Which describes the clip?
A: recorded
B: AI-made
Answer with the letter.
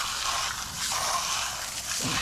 A